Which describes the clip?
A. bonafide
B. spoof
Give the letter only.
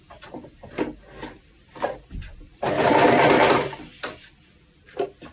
B